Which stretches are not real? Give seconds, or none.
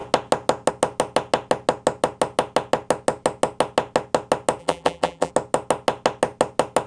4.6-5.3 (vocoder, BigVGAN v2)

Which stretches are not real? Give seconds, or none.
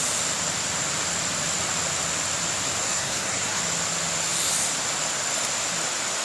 2.8-3.6 (codec, SNAC)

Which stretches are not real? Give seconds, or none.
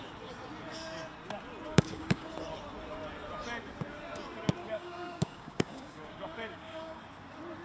1.7-2.3 (codec, DAC); 4.6-7.0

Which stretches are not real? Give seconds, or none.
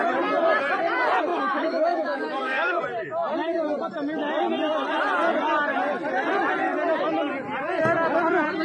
1.3-2.8 (autoencoder, DAC-VAE)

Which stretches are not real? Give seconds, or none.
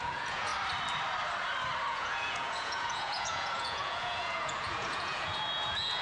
0.0-0.5 (vocoder, Vocos); 1.9-6.0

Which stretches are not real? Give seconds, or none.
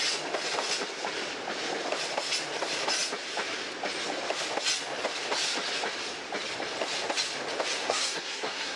7.8-8.8 (codec, SNAC)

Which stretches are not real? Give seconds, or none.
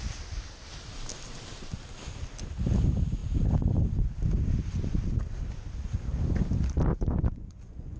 6.9-8.0 (vocoder, Vocos)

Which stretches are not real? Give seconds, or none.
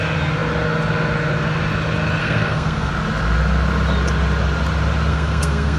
2.2-2.9 (codec, SNAC); 5.1-5.8